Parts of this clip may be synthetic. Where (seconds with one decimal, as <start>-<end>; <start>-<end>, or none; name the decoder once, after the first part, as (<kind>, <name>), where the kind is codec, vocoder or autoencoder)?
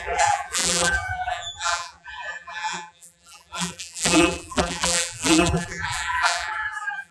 0.0-7.1 (vocoder, BigVGAN v2)